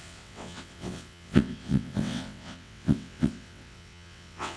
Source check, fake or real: fake